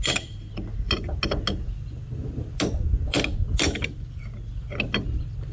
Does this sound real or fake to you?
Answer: real